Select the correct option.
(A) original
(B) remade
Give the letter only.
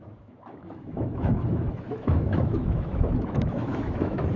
B